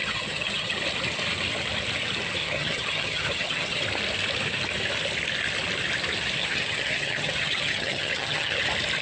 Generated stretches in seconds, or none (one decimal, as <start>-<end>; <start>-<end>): 0.0-0.8; 2.4-3.8; 6.4-8.6